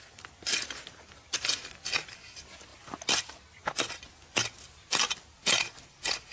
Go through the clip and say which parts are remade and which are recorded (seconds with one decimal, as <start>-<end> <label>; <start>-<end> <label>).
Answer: 0.0-6.3 recorded